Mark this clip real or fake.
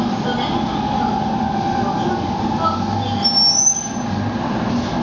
real